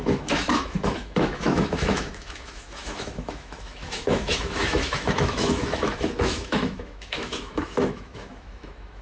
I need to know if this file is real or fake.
fake